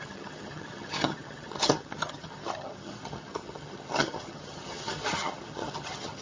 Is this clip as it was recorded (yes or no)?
no